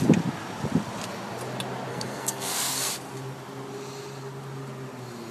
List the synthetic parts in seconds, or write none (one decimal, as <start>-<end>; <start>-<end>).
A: 1.9-2.9